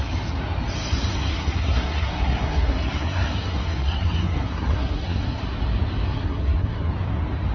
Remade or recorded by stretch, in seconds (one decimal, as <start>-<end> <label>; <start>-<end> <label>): 0.0-1.3 recorded; 1.3-5.4 remade; 5.4-6.1 recorded; 6.1-6.9 remade; 6.9-7.5 recorded